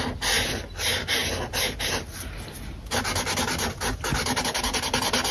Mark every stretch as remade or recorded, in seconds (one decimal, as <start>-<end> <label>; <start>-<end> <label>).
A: 0.0-5.3 recorded